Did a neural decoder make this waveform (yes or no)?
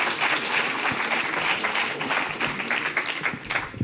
no